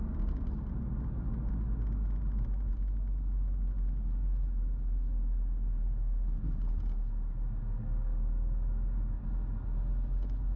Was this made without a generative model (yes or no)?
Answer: yes